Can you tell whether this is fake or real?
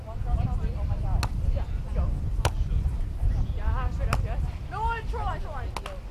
real